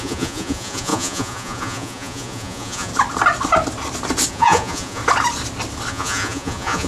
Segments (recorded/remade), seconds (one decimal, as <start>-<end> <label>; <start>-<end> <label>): 0.0-2.9 remade; 2.9-4.3 recorded; 4.3-5.0 remade; 5.0-5.9 recorded; 5.9-6.9 remade